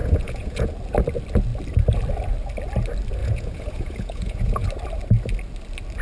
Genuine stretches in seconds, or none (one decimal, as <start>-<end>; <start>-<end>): 0.7-3.2; 4.7-6.0